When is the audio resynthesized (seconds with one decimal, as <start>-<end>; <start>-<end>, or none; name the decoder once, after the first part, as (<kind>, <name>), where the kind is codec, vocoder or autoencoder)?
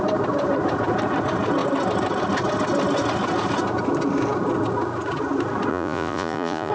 5.7-6.7 (vocoder, Vocos)